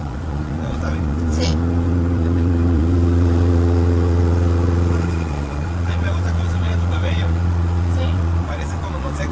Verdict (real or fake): fake